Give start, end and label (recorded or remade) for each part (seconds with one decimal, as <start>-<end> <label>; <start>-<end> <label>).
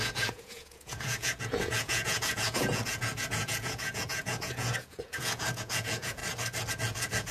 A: 0.0-6.2 remade; 6.2-6.7 recorded; 6.7-7.3 remade